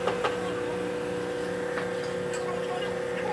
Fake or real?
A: real